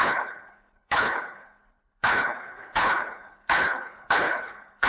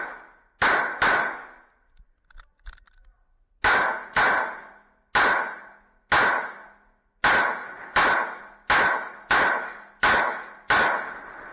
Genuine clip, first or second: second